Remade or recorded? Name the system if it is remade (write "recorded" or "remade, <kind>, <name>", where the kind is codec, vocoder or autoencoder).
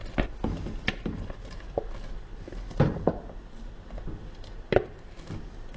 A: recorded